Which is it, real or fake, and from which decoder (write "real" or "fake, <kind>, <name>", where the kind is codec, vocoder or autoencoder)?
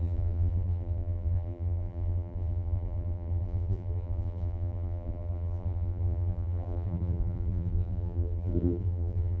fake, vocoder, BigVGAN v2